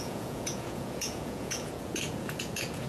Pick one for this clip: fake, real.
fake